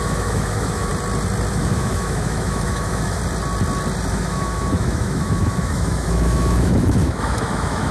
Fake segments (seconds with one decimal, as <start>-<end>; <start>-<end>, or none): 0.0-0.9; 1.5-3.2; 4.1-7.9

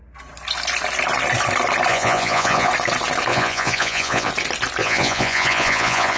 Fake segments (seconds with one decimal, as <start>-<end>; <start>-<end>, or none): 1.9-2.7; 3.3-4.3; 4.8-6.2

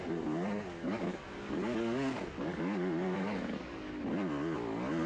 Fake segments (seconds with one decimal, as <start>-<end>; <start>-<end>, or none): 0.8-3.9

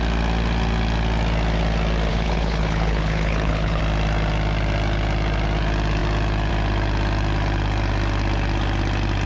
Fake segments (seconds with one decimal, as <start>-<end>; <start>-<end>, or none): 2.1-3.8

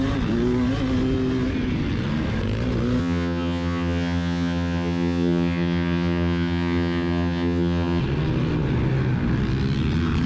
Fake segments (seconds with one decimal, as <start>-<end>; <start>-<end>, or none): 3.0-8.0

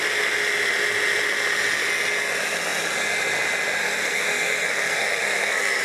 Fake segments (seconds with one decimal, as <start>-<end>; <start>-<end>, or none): 3.8-5.8